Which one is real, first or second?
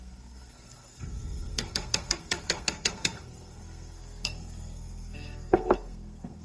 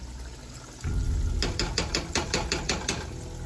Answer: second